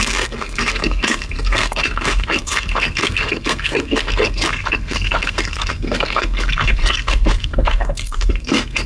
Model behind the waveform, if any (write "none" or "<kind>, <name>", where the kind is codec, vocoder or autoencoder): codec, SNAC